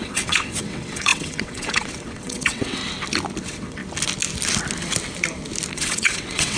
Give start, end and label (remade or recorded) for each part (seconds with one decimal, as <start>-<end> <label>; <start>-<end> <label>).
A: 0.0-2.8 remade; 2.8-3.4 recorded; 3.4-3.8 remade; 3.8-5.7 recorded; 5.7-6.6 remade